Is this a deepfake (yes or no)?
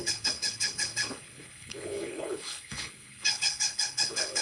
yes